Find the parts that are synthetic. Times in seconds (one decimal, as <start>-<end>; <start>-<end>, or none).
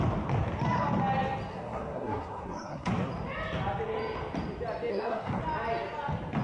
1.5-2.9; 4.9-5.4